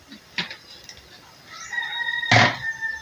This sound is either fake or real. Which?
real